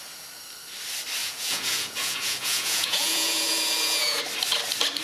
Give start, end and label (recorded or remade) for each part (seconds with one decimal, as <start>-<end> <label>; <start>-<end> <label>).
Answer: 0.0-1.2 recorded; 1.2-4.2 remade; 4.2-5.0 recorded